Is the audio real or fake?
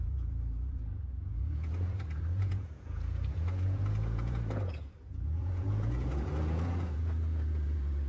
fake